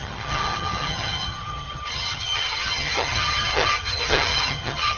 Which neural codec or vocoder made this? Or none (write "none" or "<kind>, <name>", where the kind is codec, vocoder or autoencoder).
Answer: vocoder, HiFi-GAN